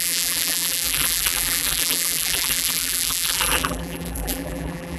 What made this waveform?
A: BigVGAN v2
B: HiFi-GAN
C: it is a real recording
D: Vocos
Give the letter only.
A